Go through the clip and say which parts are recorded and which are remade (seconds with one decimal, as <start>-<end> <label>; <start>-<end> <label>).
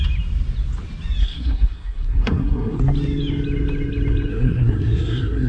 0.0-1.2 recorded; 1.2-2.8 remade; 2.8-4.3 recorded; 4.3-5.5 remade